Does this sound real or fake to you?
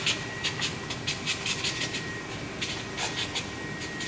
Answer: real